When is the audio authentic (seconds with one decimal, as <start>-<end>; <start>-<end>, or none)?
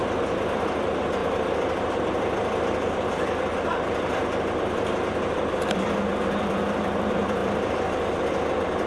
0.0-8.9